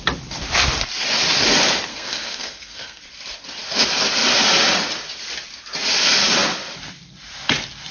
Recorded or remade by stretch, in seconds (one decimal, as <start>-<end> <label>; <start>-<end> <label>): 0.0-1.9 recorded; 1.9-3.0 remade; 3.0-7.9 recorded